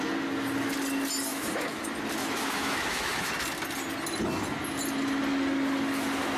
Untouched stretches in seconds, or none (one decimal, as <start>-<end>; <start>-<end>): 0.0-1.3; 1.8-2.2; 3.3-6.4